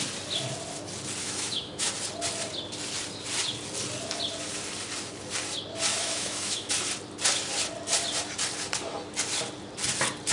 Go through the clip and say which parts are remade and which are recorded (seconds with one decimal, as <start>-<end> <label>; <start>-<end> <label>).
0.0-1.2 recorded; 1.2-1.9 remade; 1.9-5.9 recorded; 5.9-6.7 remade; 6.7-10.3 recorded